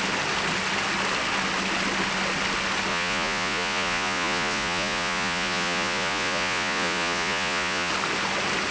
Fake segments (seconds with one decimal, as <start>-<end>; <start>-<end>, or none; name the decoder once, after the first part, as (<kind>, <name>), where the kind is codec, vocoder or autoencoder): 2.9-7.9 (vocoder, Vocos)